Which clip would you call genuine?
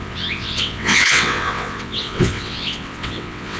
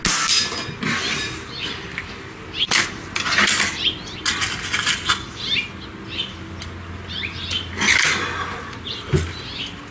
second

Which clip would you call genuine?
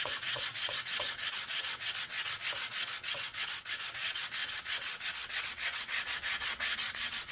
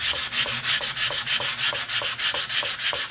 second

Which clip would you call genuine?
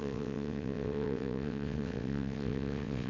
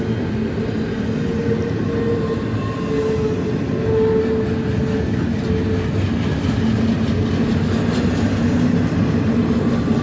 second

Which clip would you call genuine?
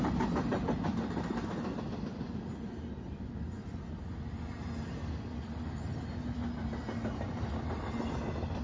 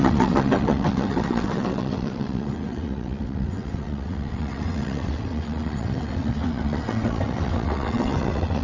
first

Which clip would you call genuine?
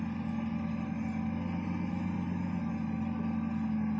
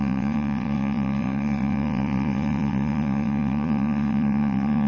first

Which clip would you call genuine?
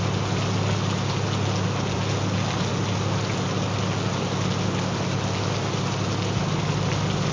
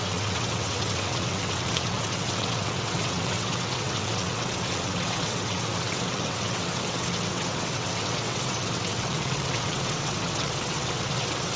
first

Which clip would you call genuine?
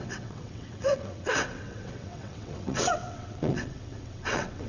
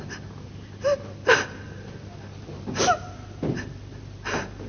second